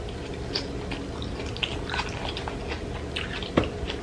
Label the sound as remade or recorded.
recorded